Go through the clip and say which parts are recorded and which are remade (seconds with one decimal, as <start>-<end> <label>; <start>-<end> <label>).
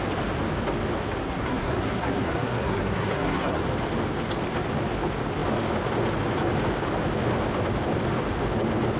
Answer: 0.0-1.2 recorded; 1.2-3.6 remade; 3.6-9.0 recorded